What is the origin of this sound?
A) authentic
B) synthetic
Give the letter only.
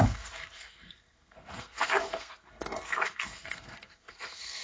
B